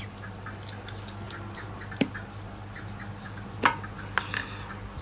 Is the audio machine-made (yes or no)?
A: no